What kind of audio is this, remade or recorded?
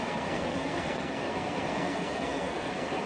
remade